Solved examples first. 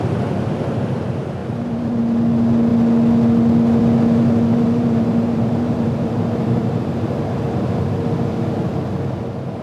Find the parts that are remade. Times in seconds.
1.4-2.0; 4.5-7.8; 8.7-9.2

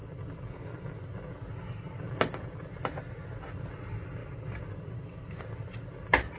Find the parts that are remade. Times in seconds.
none

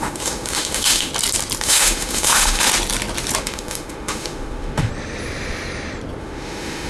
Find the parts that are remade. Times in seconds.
0.0-1.1; 1.6-2.7; 3.4-4.9; 6.2-6.9